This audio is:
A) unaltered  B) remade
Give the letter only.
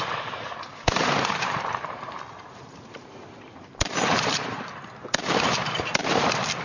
B